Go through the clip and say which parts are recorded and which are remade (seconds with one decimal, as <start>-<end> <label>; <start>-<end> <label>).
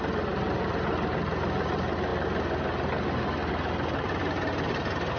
0.0-5.2 recorded